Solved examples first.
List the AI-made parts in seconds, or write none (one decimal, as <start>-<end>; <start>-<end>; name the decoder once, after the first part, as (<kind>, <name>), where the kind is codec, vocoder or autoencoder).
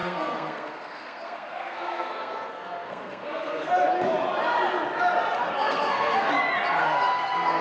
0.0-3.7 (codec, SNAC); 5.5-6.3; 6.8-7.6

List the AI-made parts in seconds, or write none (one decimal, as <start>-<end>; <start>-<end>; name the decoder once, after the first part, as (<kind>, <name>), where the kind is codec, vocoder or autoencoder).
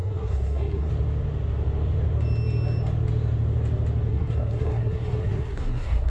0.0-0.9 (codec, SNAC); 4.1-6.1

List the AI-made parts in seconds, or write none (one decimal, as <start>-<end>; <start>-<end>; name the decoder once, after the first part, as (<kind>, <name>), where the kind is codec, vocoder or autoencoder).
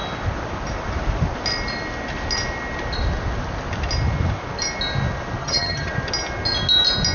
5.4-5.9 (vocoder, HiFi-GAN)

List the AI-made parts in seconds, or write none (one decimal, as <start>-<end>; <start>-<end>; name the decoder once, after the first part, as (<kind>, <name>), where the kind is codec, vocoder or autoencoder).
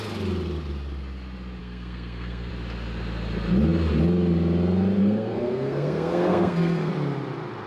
1.6-2.5 (codec, SNAC); 5.0-6.9